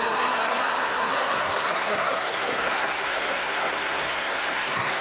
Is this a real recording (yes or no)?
no